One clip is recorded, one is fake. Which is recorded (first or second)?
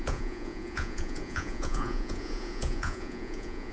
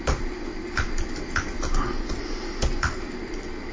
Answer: second